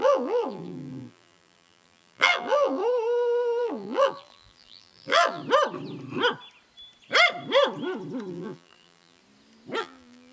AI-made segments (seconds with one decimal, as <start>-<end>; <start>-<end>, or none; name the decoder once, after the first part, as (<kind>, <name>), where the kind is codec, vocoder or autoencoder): 0.0-2.8 (vocoder, BigVGAN v2); 3.6-5.4; 8.3-9.2; 9.8-10.3